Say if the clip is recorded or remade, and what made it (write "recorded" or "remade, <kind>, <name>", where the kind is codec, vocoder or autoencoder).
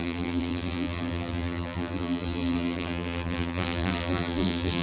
remade, vocoder, BigVGAN v2